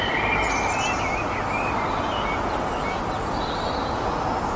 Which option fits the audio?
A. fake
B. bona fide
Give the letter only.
B